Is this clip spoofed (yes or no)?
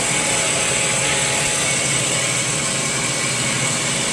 no